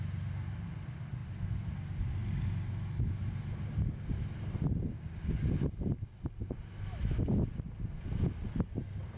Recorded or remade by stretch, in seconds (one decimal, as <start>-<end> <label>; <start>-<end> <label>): 0.0-9.2 recorded